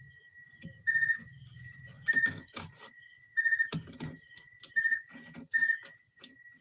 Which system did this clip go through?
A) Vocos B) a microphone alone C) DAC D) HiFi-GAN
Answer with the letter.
B